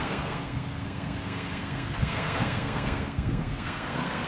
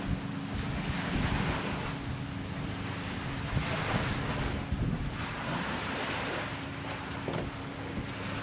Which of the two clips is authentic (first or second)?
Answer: second